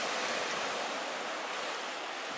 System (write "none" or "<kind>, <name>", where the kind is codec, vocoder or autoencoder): none